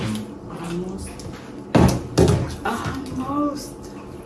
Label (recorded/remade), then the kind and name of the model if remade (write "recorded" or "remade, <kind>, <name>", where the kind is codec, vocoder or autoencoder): recorded